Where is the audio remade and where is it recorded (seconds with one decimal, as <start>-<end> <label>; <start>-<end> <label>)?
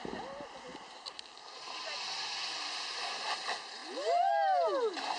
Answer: 0.0-3.8 recorded; 3.8-4.3 remade; 4.3-5.2 recorded